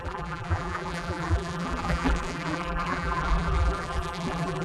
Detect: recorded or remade remade